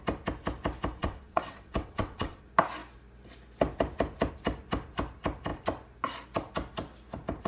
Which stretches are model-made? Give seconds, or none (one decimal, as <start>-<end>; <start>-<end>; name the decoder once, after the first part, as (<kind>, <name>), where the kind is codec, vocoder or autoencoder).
1.0-2.4 (vocoder, WaveNeXt)